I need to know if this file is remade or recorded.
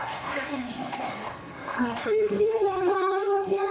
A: remade